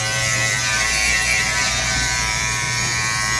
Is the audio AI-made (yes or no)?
yes